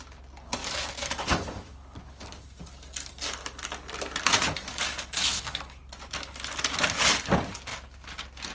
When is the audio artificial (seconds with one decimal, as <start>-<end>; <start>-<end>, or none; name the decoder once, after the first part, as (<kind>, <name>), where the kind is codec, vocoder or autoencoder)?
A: 0.6-2.6 (codec, DAC); 4.7-5.8